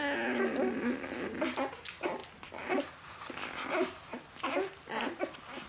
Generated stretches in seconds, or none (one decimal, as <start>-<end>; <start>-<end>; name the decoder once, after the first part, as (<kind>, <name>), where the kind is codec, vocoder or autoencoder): none